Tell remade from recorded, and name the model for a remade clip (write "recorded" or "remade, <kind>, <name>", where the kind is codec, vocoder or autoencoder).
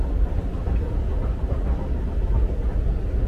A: recorded